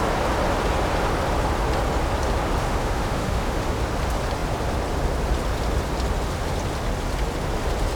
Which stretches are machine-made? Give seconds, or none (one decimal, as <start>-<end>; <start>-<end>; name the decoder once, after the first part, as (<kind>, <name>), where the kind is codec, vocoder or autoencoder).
2.6-3.8 (autoencoder, DAC-VAE)